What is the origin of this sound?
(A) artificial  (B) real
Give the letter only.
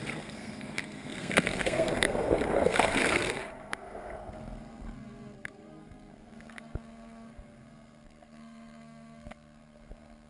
A